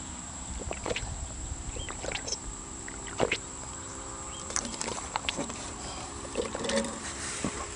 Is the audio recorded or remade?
remade